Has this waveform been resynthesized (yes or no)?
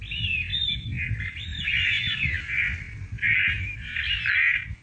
no